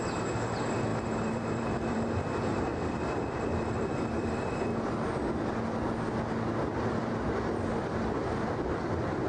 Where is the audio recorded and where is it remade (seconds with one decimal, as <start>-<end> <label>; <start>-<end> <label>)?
0.0-2.7 remade; 2.7-3.3 recorded; 3.3-4.7 remade; 4.7-6.9 recorded; 6.9-9.3 remade